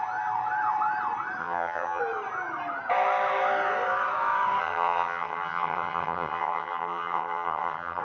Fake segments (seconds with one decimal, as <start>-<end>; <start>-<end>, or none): 1.4-2.0; 4.6-8.0